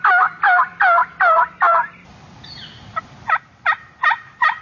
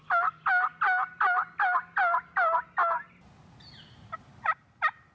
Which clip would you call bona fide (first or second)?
second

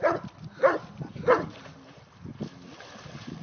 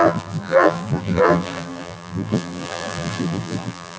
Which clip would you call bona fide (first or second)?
first